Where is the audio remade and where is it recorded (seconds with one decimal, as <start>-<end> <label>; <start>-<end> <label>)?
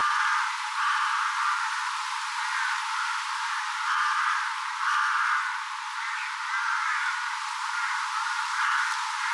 0.0-9.3 recorded